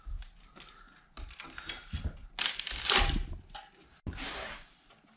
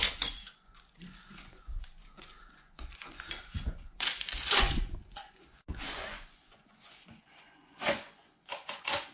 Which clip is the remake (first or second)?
second